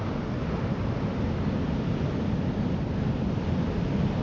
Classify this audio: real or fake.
real